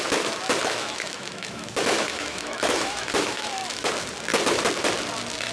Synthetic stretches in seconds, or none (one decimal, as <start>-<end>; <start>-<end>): 0.6-3.9